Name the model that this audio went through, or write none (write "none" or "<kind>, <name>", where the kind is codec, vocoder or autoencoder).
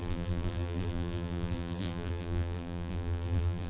vocoder, BigVGAN v2